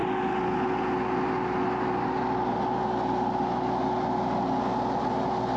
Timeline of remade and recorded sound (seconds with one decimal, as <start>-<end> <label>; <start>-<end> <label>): 0.0-5.6 recorded